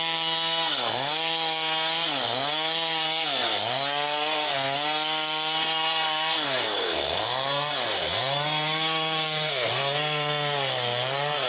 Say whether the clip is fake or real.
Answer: fake